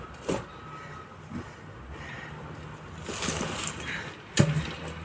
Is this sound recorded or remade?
recorded